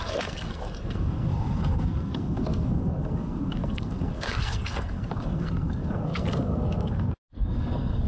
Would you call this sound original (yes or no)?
no